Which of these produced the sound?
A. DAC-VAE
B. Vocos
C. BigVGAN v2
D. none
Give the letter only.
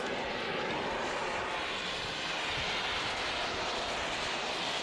D